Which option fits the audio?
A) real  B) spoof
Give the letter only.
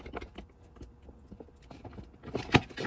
A